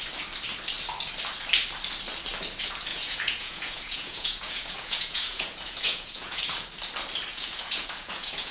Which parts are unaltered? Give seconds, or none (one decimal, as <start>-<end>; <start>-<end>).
0.0-2.9; 6.4-7.3